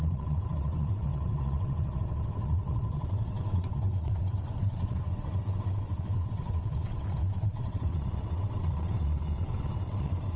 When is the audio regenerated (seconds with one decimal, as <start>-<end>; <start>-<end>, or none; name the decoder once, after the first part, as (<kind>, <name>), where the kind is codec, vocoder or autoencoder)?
0.0-10.4 (vocoder, WaveNeXt)